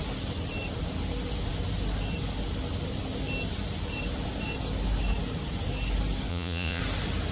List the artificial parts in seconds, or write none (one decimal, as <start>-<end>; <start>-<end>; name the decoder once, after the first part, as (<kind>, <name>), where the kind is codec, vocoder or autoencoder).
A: 6.3-6.8 (vocoder, Vocos)